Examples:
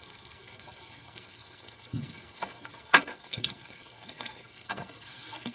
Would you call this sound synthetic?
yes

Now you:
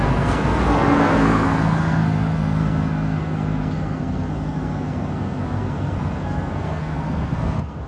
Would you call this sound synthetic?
yes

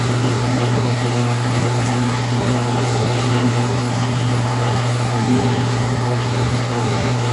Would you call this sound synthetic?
yes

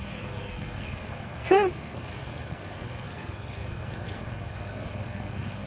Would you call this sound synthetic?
yes